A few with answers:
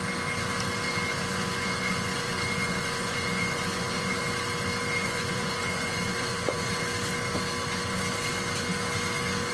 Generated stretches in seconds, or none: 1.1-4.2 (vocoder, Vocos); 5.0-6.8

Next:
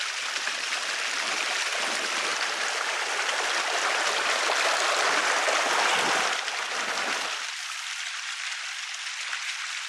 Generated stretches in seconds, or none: none

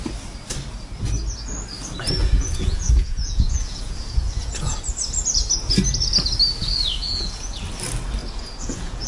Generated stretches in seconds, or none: 2.2-4.8 (vocoder, Vocos); 6.6-7.6; 8.2-9.1

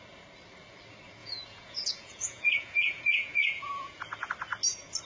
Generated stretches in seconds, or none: 1.2-4.3 (vocoder, Vocos)